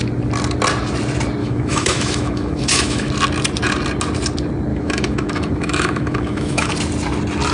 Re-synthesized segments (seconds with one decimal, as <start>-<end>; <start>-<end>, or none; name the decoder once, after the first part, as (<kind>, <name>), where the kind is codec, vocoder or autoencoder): 1.4-3.1 (autoencoder, DAC-VAE); 4.7-6.7

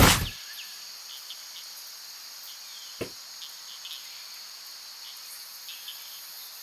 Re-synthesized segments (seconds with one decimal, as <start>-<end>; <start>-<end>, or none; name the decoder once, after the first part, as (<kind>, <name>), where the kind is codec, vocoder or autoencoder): none

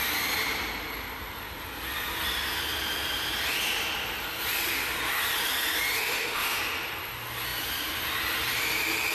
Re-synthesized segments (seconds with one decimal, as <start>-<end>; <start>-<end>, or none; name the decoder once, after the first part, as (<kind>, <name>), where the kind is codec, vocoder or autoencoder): 6.0-6.6 (autoencoder, DAC-VAE)

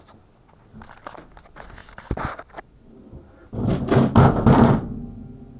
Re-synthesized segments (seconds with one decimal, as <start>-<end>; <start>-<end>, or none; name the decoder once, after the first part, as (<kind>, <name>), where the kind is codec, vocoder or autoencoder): none

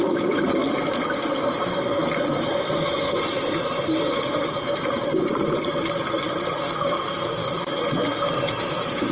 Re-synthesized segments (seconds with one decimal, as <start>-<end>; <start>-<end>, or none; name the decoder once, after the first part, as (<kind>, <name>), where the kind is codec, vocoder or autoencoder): 0.0-0.6 (autoencoder, DAC-VAE); 1.5-2.0; 6.8-7.4; 8.6-9.1

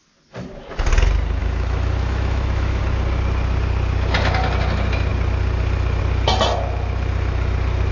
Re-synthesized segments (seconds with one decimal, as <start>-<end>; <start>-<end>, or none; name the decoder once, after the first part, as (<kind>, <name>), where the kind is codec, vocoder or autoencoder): 1.4-2.8 (autoencoder, DAC-VAE)